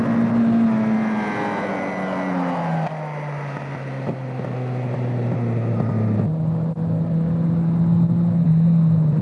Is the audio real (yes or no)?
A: yes